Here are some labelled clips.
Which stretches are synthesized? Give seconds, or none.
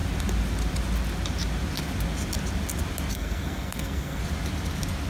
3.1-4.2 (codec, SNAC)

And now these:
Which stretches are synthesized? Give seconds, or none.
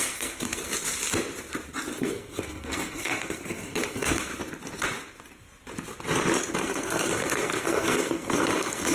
0.0-0.7 (codec, SNAC); 2.0-4.3; 6.5-8.9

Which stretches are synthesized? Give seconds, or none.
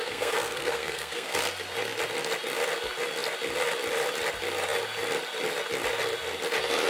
0.0-1.4 (codec, SNAC)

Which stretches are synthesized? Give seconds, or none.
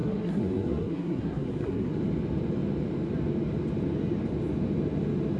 0.0-2.0 (codec, SNAC)